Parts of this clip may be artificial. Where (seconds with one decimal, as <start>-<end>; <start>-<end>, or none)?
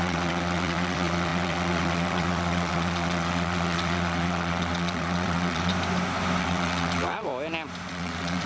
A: 0.0-5.7; 6.4-7.3; 7.9-8.5